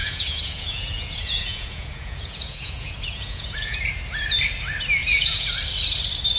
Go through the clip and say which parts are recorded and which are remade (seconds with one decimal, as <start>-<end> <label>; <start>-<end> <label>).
0.0-3.8 remade; 3.8-5.0 recorded; 5.0-5.6 remade; 5.6-6.4 recorded